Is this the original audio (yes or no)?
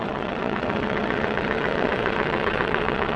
no